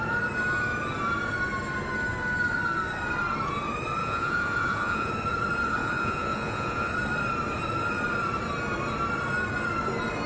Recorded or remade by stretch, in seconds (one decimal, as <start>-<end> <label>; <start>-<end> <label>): 0.0-4.0 recorded; 4.0-5.1 remade; 5.1-5.8 recorded; 5.8-6.9 remade; 6.9-10.3 recorded